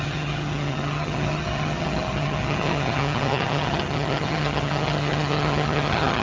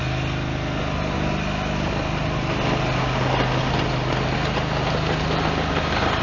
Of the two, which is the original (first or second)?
second